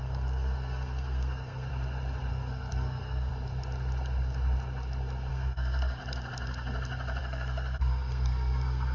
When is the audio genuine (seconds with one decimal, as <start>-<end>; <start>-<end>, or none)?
1.7-2.3; 3.3-5.3; 6.0-7.2